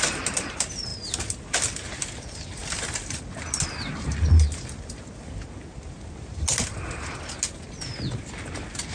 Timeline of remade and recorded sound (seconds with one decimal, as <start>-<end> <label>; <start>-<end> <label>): 0.0-8.9 recorded